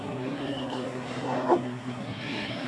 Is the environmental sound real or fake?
fake